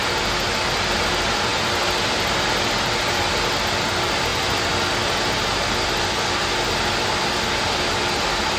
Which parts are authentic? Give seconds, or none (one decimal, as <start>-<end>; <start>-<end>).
0.0-8.6

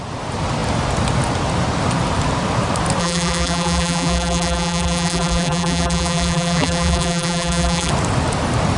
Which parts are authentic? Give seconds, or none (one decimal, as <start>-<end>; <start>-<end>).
0.0-3.0; 7.9-8.8

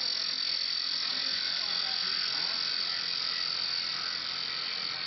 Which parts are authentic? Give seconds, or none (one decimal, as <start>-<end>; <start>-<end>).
0.0-5.1

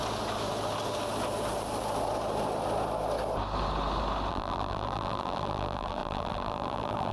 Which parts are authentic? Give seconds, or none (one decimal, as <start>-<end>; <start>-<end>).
0.0-4.3

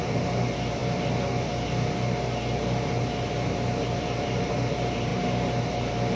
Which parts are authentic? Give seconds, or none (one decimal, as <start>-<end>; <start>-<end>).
0.8-3.2; 5.1-6.2

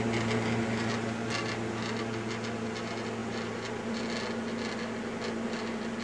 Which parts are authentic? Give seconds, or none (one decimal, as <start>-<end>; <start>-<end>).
0.0-3.2; 4.0-6.0

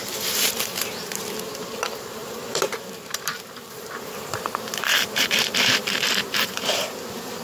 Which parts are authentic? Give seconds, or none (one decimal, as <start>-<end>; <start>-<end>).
none

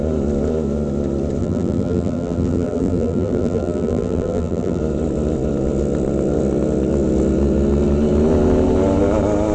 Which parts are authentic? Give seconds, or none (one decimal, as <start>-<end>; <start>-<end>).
0.0-1.4; 4.8-9.5